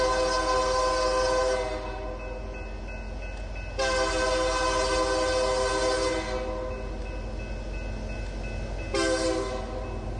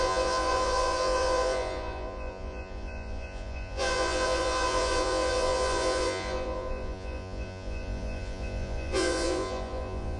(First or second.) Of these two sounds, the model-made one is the second